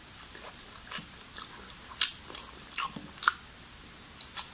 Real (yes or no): yes